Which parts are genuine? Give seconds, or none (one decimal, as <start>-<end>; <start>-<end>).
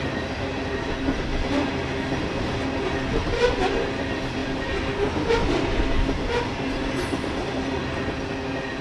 0.0-8.8